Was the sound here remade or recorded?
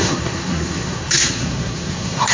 remade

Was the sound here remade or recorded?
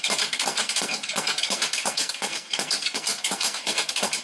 remade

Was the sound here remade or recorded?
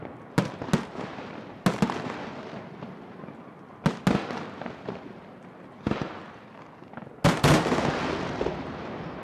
recorded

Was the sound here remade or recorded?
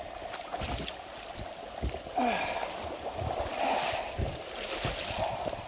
recorded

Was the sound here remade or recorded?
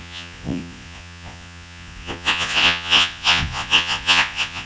remade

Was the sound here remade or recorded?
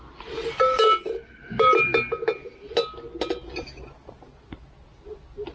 recorded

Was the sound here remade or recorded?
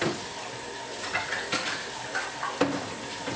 remade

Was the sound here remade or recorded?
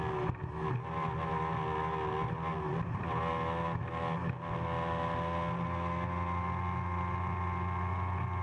recorded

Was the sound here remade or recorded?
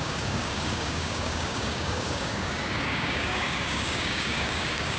remade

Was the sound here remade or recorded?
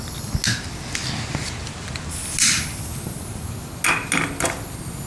recorded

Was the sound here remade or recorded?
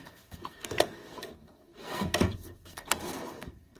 remade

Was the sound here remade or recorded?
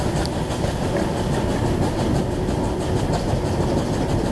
recorded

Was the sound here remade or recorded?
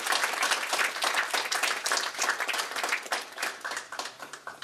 remade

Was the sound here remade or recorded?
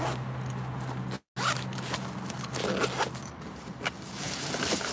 recorded